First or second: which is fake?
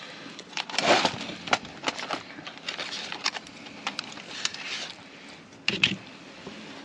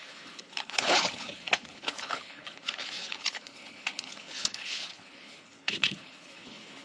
second